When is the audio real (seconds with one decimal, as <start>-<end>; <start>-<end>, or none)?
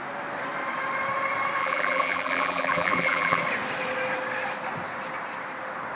0.0-1.6; 3.4-6.0